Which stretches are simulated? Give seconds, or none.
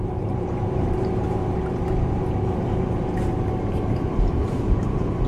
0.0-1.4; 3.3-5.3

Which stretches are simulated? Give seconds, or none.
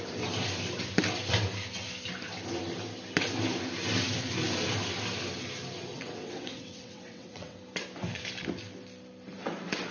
5.9-7.6